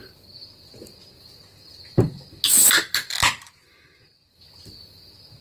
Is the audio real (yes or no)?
yes